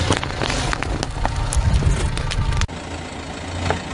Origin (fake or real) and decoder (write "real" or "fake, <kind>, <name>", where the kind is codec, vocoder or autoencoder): real